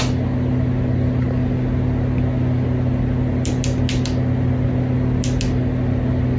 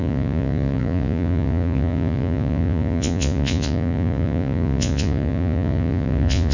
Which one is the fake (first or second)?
second